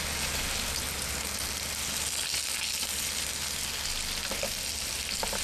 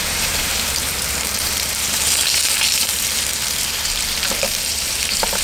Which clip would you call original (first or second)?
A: first